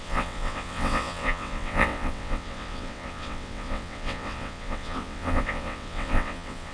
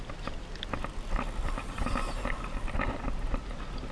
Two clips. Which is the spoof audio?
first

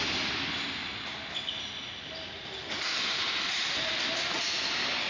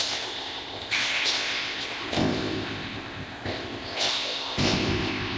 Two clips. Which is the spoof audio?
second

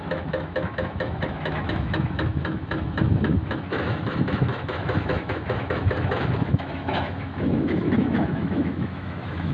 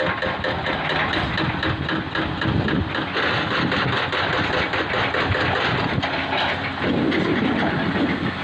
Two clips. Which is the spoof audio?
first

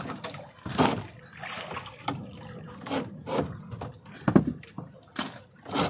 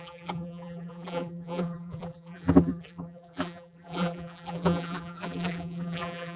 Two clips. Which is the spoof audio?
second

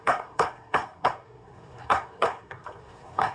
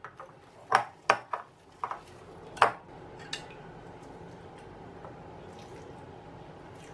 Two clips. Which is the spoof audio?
first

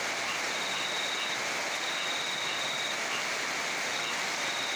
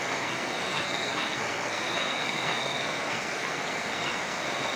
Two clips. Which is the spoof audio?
second